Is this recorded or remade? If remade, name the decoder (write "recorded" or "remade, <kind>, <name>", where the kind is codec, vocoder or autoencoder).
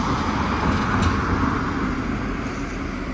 recorded